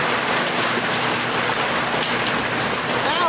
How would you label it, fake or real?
real